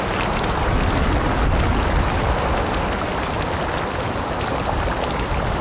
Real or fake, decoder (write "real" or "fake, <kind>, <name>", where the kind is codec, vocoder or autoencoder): real